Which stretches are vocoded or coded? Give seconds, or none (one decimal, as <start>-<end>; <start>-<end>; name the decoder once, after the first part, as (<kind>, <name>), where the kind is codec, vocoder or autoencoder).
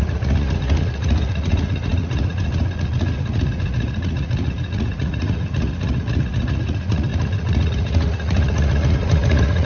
0.0-9.6 (vocoder, Vocos)